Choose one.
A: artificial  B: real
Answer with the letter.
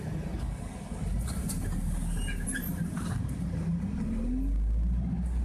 B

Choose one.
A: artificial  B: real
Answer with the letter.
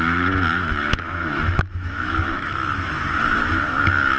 A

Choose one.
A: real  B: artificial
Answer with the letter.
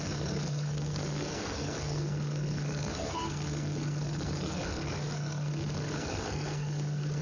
B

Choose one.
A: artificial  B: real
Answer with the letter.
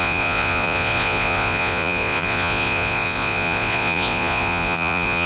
A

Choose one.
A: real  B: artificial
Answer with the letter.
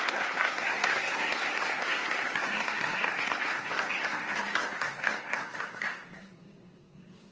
B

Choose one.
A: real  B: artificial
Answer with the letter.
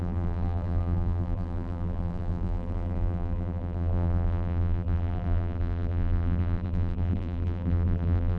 B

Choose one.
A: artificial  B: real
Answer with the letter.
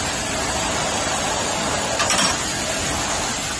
B